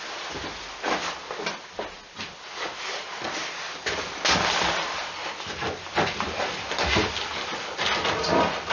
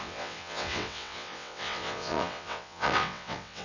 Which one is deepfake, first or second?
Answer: second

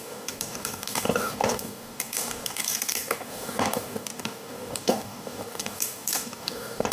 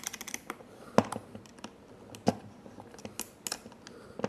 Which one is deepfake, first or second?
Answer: first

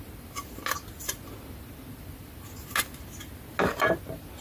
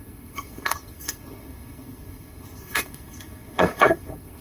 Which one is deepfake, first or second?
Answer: second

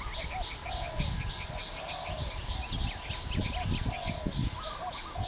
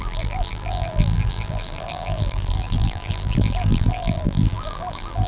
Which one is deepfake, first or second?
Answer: second